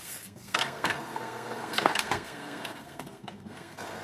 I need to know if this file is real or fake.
fake